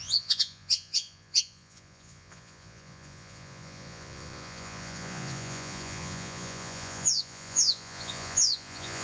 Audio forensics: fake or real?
fake